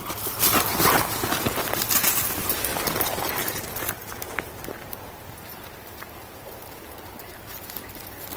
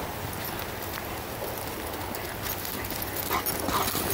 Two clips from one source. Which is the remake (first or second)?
first